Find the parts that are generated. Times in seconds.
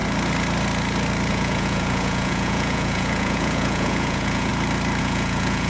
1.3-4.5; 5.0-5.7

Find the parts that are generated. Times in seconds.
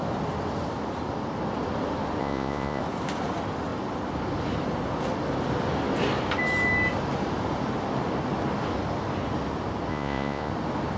2.2-2.8; 9.9-10.5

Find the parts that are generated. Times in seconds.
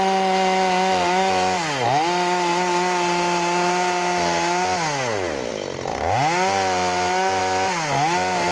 none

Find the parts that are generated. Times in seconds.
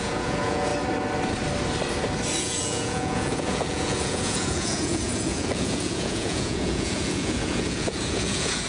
0.0-0.7; 2.4-8.7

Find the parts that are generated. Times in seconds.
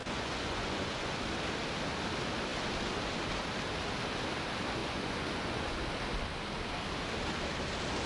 0.0-1.2; 4.8-5.8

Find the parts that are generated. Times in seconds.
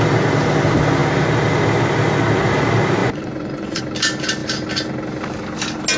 3.0-3.8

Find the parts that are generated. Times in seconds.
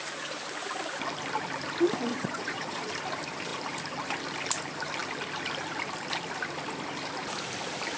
2.1-2.9